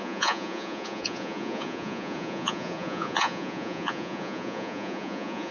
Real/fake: fake